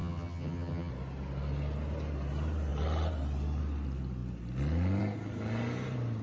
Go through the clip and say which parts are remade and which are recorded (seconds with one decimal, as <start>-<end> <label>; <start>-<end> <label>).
0.0-0.9 remade; 0.9-6.2 recorded

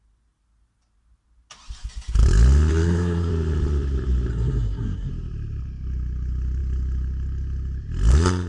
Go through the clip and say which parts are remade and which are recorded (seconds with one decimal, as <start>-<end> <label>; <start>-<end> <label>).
0.0-2.7 recorded; 2.7-3.3 remade; 3.3-4.3 recorded; 4.3-5.1 remade; 5.1-8.5 recorded

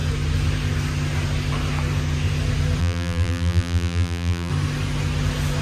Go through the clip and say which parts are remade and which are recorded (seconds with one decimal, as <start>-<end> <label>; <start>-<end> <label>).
0.0-2.8 recorded; 2.8-4.5 remade; 4.5-5.6 recorded

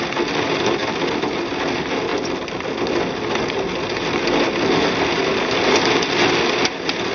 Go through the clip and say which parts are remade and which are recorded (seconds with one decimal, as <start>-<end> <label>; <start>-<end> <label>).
0.0-7.1 recorded

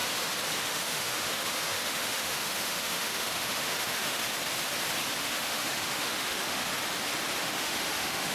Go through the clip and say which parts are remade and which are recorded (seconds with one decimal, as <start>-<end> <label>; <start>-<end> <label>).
0.0-0.6 recorded; 0.6-4.2 remade; 4.2-5.2 recorded; 5.2-6.7 remade; 6.7-7.4 recorded; 7.4-8.3 remade